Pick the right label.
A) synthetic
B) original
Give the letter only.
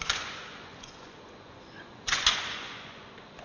A